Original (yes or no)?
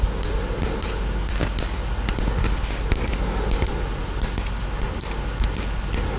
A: yes